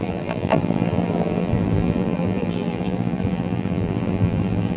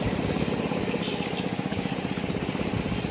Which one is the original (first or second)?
second